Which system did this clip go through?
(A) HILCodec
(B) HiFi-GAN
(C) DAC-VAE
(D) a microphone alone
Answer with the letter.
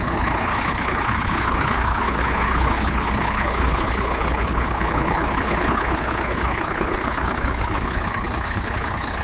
A